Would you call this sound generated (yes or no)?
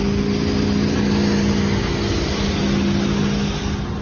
no